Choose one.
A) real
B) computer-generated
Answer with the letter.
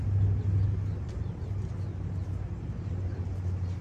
A